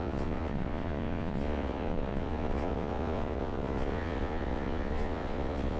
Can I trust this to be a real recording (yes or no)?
no